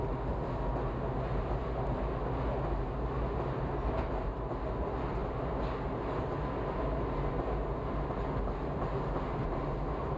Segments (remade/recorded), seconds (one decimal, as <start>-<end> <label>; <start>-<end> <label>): 0.0-10.2 recorded